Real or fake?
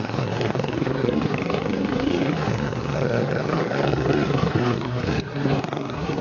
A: fake